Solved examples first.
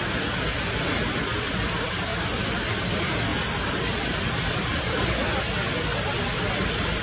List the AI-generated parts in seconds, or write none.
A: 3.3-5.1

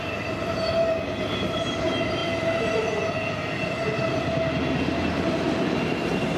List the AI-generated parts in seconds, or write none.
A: none

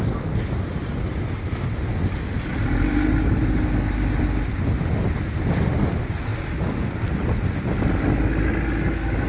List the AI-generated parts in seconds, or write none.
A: none

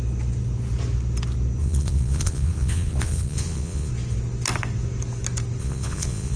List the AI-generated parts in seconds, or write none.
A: 1.6-3.9; 5.6-6.4